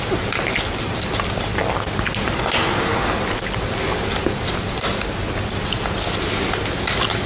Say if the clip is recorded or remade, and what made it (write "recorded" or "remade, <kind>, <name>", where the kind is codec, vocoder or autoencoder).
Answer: recorded